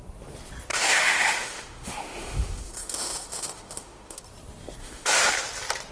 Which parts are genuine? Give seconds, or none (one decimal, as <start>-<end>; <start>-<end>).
0.0-0.7; 4.2-4.8; 5.3-5.9